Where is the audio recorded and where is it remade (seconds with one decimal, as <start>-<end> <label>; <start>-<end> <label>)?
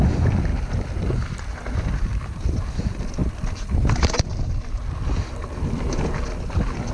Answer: 0.0-6.9 recorded